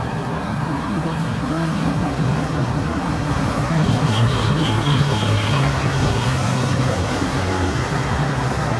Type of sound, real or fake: fake